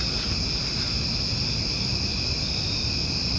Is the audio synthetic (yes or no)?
no